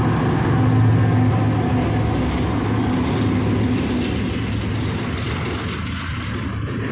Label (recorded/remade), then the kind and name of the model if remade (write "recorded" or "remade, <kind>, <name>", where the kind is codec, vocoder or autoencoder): recorded